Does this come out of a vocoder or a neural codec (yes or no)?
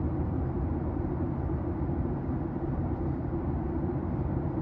yes